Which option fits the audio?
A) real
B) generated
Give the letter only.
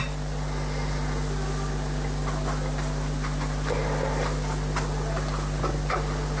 A